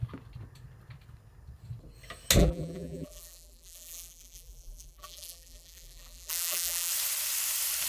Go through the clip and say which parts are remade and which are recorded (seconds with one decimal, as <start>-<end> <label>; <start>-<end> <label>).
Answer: 0.0-2.4 recorded; 2.4-6.9 remade; 6.9-7.9 recorded